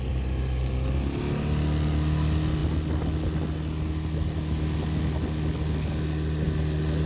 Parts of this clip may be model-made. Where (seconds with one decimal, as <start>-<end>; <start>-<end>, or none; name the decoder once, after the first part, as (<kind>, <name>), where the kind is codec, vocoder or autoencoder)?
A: none